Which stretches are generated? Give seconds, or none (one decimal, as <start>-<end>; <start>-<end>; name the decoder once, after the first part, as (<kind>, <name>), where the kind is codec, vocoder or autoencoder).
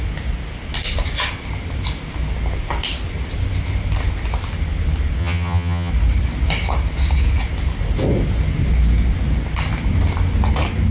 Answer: 5.2-5.9 (vocoder, HiFi-GAN)